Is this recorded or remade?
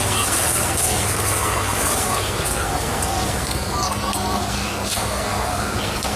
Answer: remade